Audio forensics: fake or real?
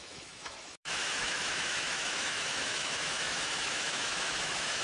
fake